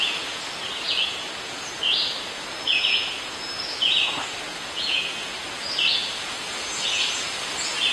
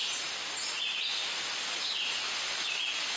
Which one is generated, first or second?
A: first